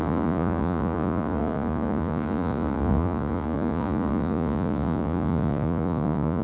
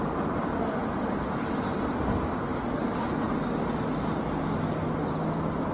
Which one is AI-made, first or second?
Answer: first